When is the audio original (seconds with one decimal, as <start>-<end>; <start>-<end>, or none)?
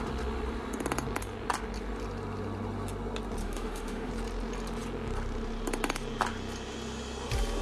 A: 0.0-3.4; 4.1-7.6